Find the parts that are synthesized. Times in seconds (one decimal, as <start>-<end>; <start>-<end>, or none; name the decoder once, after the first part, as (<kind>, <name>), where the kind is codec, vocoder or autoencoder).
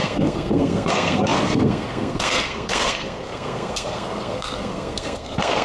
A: 0.0-5.6 (codec, SNAC)